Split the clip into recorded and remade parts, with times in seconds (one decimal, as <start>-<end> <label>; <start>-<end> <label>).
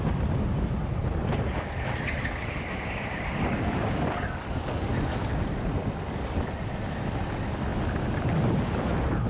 0.0-9.3 recorded